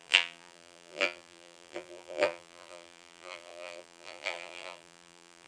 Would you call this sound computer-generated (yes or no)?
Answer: yes